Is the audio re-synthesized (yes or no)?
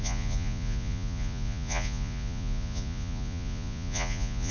yes